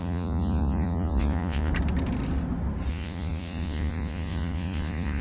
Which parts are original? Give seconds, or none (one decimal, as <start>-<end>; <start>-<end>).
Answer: 1.7-2.9